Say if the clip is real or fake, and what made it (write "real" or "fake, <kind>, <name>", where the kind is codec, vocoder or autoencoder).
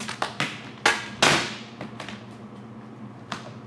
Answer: real